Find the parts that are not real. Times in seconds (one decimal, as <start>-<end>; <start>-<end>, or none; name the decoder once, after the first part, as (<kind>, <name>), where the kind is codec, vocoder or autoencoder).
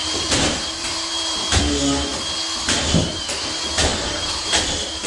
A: 0.0-1.6 (vocoder, BigVGAN v2); 3.8-4.5